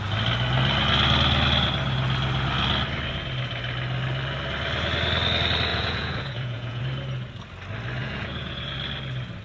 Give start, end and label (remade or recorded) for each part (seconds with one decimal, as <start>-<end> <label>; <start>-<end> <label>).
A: 0.0-5.7 recorded; 5.7-6.8 remade; 6.8-8.0 recorded; 8.0-8.6 remade; 8.6-9.4 recorded